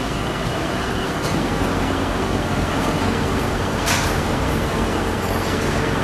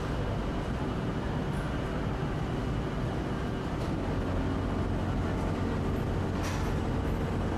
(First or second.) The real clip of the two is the second